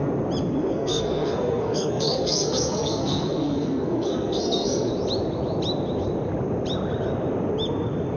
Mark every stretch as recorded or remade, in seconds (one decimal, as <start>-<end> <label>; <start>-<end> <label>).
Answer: 0.0-0.7 recorded; 0.7-4.9 remade; 4.9-8.2 recorded